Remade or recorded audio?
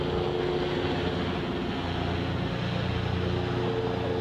recorded